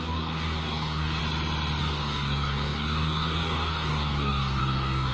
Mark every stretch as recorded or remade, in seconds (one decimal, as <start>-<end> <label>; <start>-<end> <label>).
0.0-1.2 remade; 1.2-1.8 recorded; 1.8-5.1 remade